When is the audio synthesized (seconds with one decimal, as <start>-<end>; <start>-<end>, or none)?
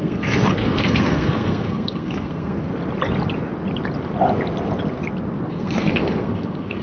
0.0-2.7; 5.5-6.8